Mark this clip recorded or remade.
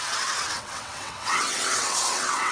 remade